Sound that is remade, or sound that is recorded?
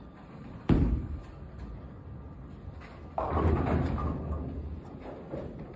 recorded